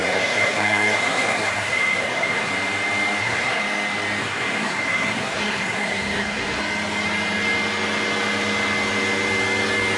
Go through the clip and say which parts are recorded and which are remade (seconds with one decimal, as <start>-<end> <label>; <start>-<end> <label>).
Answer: 0.0-2.5 remade; 2.5-3.2 recorded; 3.2-3.6 remade; 3.6-4.2 recorded; 4.2-6.6 remade; 6.6-10.0 recorded